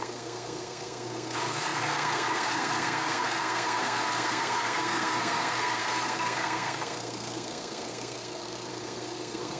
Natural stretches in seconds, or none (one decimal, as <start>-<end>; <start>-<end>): none